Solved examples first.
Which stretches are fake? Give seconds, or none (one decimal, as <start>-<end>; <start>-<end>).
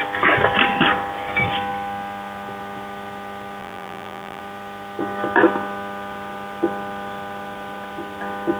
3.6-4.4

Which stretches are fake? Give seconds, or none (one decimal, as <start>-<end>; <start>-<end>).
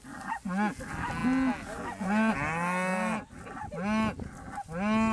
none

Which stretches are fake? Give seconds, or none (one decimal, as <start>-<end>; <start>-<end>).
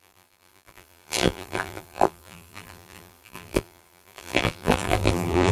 0.0-5.5